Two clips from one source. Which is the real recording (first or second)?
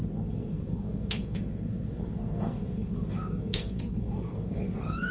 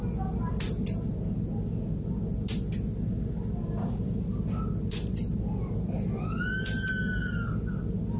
second